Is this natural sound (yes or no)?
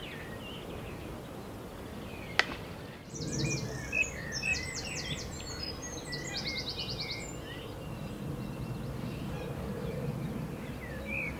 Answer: yes